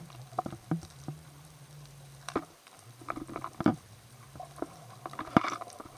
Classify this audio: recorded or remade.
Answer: remade